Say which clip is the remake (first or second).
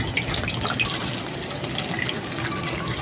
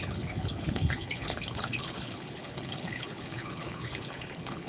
second